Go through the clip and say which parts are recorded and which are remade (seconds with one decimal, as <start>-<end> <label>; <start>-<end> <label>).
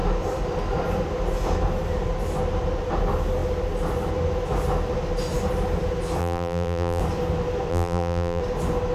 0.0-6.2 recorded; 6.2-7.0 remade; 7.0-7.7 recorded; 7.7-8.4 remade; 8.4-8.9 recorded